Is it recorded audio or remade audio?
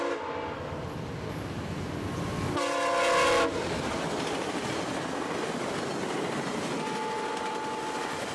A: recorded